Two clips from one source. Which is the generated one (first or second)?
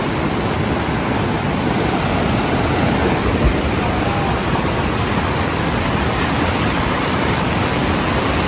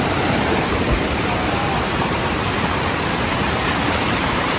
second